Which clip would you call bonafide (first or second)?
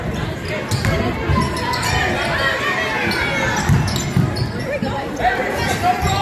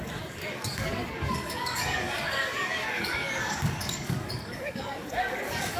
first